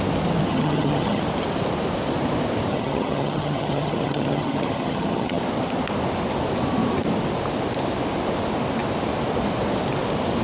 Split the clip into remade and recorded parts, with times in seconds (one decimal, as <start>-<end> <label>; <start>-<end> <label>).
0.0-0.5 recorded; 0.5-1.2 remade; 1.2-2.7 recorded; 2.7-5.4 remade; 5.4-10.4 recorded